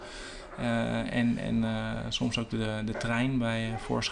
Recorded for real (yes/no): yes